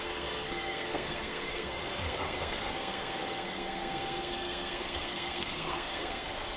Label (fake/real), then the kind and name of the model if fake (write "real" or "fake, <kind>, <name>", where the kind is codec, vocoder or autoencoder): fake, codec, SNAC